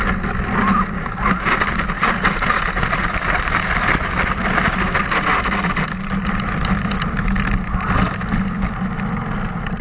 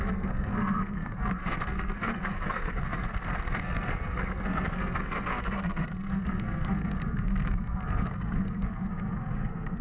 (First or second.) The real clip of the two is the first